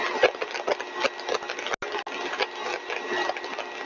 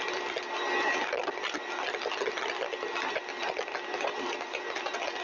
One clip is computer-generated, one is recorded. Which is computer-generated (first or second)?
second